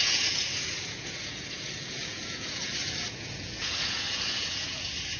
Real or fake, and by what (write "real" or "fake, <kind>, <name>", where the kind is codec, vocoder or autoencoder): fake, vocoder, Vocos